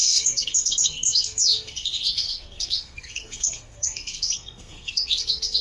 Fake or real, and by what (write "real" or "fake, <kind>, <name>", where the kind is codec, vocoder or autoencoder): fake, codec, SNAC